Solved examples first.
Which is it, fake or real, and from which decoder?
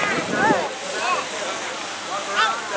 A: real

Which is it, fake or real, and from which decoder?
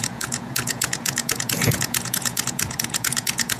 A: fake, vocoder, Vocos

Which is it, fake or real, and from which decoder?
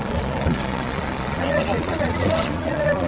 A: fake, vocoder, Vocos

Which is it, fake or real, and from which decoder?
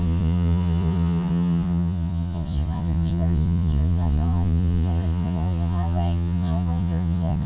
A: fake, vocoder, Vocos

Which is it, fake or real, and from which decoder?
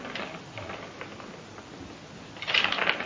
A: real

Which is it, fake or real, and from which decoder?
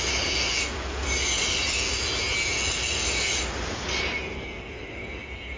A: real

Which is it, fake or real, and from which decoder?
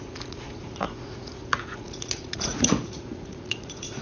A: fake, vocoder, Vocos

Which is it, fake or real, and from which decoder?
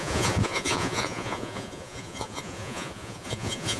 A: fake, vocoder, Vocos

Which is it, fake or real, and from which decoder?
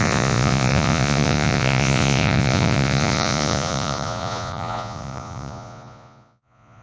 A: fake, vocoder, Vocos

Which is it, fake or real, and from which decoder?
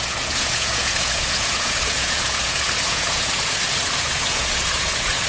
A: fake, vocoder, Vocos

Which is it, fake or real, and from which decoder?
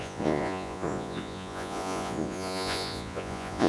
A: fake, vocoder, Vocos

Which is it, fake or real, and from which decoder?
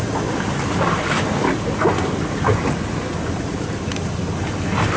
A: real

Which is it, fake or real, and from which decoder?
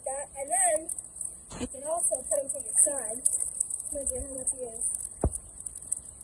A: fake, vocoder, Vocos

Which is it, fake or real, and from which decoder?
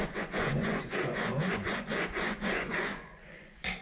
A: fake, vocoder, Vocos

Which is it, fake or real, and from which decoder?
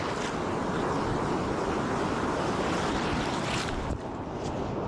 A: real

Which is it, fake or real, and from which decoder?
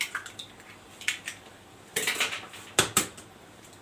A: real